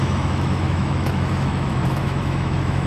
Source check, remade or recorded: remade